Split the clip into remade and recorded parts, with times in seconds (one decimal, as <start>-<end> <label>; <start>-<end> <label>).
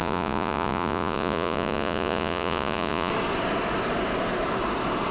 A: 0.0-3.1 remade; 3.1-5.1 recorded